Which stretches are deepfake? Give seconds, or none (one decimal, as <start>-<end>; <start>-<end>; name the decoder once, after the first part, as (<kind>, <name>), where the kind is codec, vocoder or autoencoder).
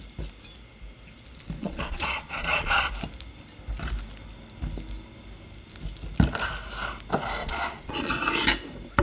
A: 1.6-2.9 (vocoder, Vocos); 7.4-8.1